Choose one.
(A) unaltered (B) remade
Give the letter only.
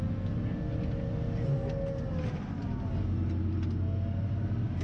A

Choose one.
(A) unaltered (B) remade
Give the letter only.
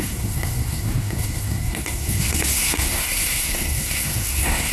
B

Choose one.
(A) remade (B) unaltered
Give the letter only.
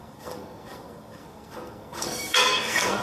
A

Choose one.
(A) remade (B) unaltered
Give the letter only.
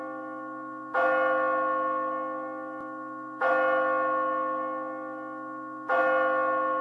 B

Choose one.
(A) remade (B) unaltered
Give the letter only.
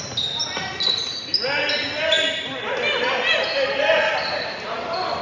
B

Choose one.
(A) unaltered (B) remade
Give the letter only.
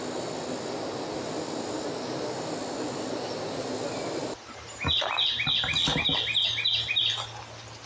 A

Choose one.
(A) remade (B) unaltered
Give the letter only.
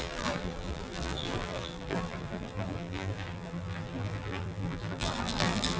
A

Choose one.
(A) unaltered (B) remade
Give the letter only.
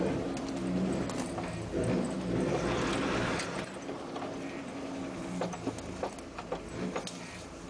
A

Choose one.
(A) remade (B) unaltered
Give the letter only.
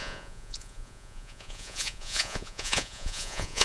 A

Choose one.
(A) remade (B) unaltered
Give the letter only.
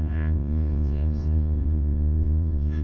A